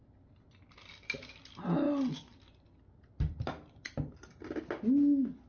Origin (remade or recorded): recorded